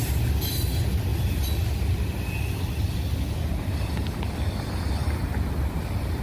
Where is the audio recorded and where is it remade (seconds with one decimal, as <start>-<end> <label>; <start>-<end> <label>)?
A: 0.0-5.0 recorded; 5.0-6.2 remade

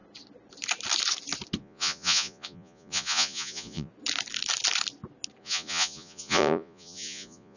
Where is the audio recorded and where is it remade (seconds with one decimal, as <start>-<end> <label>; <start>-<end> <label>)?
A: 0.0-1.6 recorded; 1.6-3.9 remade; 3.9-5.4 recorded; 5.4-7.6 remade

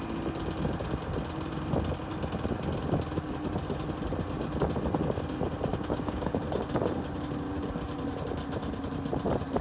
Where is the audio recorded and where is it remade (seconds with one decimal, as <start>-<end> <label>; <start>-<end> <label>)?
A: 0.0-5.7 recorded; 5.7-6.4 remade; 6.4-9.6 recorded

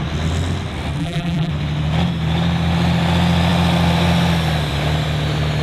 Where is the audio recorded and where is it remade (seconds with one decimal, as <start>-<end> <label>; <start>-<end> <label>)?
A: 0.0-1.0 recorded; 1.0-1.5 remade; 1.5-5.6 recorded

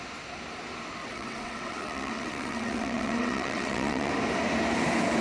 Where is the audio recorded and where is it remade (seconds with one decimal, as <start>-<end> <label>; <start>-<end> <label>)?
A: 0.0-1.0 recorded; 1.0-4.1 remade; 4.1-5.2 recorded